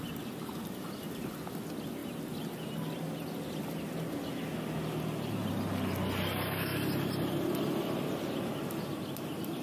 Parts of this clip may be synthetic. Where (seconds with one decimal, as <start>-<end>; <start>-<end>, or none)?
none